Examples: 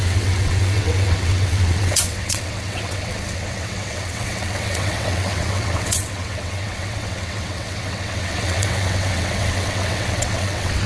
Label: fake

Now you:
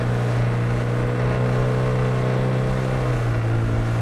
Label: real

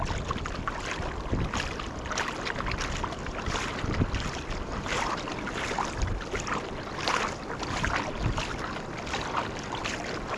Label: real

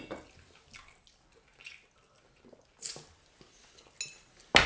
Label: real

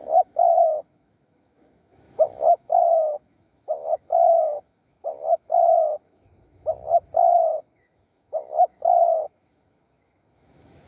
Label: fake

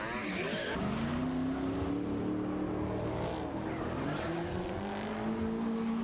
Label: real